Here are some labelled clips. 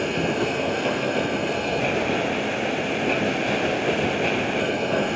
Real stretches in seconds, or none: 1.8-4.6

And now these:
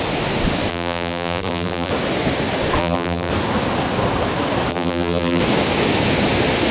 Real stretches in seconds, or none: 0.0-0.7; 1.9-2.8; 3.3-4.7; 5.4-6.7

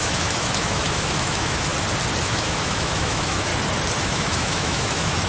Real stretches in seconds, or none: 1.7-2.2; 3.5-4.0

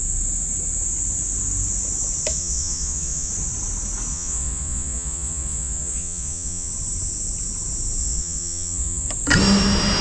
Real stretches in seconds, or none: 0.0-2.3; 3.3-4.1; 6.7-8.0; 9.1-10.0

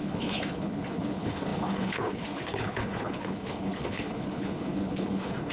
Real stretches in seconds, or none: none

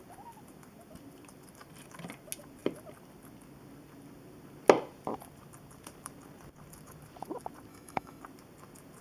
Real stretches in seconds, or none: 0.0-7.7; 8.2-9.0

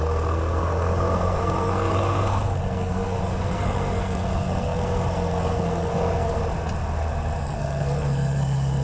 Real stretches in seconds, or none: 6.4-7.4